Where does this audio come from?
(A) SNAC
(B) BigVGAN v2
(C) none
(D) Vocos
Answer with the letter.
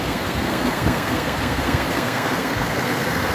A